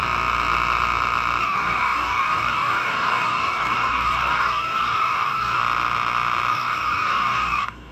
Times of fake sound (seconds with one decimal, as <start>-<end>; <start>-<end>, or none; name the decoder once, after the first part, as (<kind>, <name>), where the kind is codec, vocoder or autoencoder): 1.4-5.6 (codec, DAC); 6.5-7.9